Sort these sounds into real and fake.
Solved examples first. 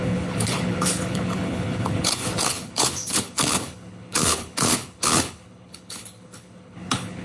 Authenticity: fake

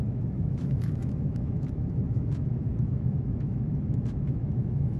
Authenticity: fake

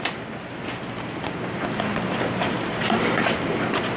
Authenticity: real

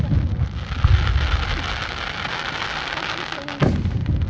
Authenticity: real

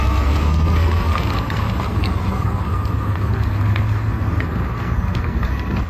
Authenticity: fake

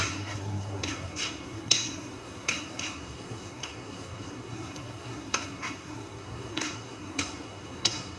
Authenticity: fake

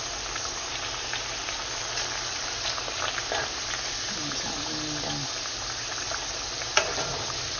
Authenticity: real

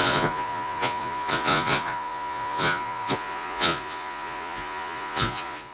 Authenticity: fake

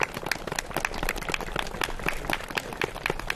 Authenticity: real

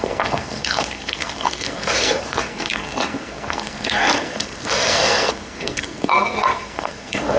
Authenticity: fake